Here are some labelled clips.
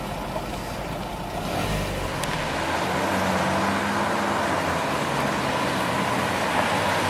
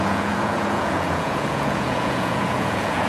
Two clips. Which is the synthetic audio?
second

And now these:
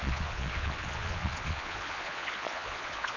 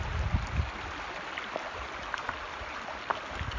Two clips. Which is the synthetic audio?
first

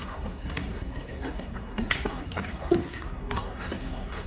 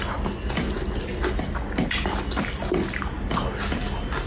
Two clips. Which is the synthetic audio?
first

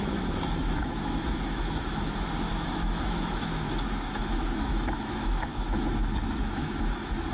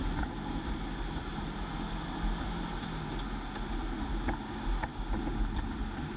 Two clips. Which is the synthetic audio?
first